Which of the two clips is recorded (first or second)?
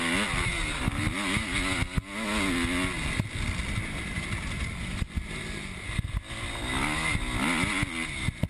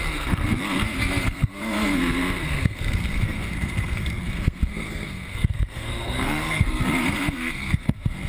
first